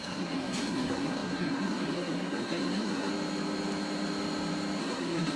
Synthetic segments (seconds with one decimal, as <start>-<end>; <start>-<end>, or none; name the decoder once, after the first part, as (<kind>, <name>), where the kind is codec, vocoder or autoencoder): 0.0-3.1 (codec, SNAC); 4.8-5.4